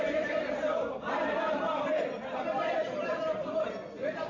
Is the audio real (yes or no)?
no